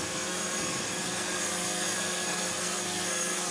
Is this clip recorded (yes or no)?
no